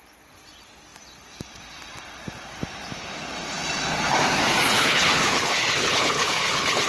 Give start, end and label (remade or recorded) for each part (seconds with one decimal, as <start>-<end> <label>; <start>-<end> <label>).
0.0-4.7 recorded; 4.7-6.9 remade